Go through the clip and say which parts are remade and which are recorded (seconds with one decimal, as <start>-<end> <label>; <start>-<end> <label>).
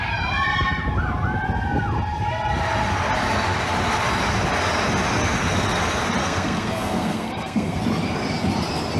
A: 0.0-6.2 recorded; 6.2-7.8 remade; 7.8-9.0 recorded